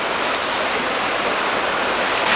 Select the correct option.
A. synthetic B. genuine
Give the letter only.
B